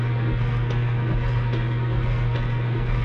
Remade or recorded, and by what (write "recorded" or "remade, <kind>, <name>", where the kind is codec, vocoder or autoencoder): remade, codec, SNAC